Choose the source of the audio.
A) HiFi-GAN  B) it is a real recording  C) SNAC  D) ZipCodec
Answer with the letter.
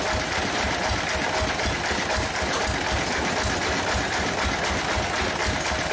B